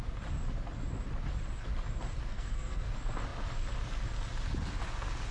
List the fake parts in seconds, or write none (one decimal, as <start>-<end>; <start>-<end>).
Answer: 2.3-2.9